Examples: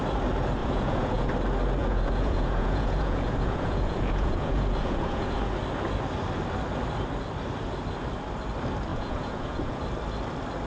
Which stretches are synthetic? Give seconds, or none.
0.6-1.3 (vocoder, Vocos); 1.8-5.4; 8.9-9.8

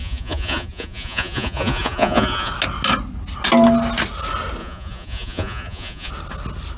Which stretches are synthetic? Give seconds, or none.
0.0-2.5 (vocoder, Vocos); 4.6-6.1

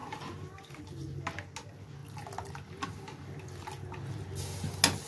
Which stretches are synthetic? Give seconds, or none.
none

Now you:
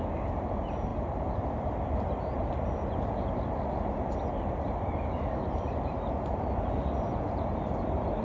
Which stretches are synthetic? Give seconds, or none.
none